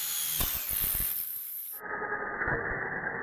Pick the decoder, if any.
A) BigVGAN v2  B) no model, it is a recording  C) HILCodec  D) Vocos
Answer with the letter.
B